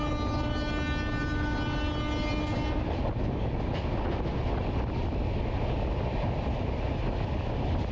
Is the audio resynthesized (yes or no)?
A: no